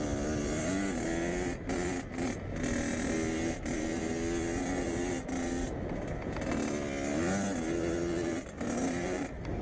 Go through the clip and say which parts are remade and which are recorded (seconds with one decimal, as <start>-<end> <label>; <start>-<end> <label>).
0.0-8.8 recorded; 8.8-9.6 remade